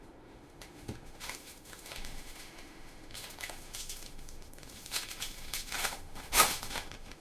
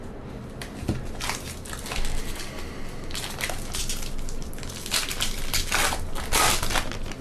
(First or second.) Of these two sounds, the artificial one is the first